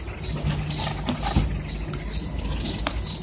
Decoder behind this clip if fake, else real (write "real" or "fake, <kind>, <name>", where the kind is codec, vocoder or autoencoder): real